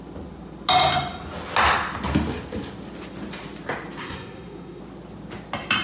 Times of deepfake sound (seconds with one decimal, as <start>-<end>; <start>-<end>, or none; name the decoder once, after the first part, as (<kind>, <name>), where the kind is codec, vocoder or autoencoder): 4.0-4.8 (codec, SNAC)

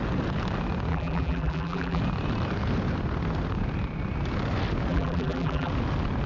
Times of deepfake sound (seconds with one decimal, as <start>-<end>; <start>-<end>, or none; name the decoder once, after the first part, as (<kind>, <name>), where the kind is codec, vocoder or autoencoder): 0.9-2.0 (vocoder, BigVGAN v2); 4.9-5.7

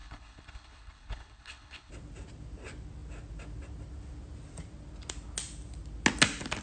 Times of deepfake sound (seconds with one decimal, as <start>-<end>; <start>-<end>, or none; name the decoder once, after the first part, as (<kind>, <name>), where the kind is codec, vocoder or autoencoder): 0.0-1.9 (codec, HILCodec)

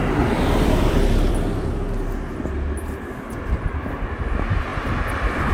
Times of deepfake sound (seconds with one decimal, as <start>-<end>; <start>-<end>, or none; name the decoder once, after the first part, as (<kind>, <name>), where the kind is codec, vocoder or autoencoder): 0.0-1.3 (vocoder, BigVGAN v2); 4.7-5.5

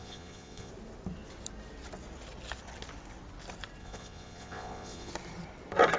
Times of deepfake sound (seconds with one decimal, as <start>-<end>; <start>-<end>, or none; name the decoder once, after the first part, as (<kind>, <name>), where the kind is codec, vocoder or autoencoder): 0.0-0.7 (vocoder, Vocos); 3.8-5.1